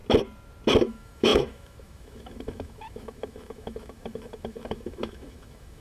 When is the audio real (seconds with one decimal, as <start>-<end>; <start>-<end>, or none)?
0.0-0.8